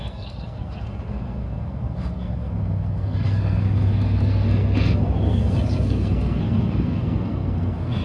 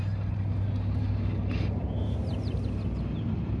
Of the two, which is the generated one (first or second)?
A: first